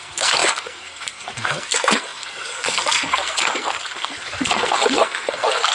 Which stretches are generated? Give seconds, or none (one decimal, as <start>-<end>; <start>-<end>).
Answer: 0.0-5.7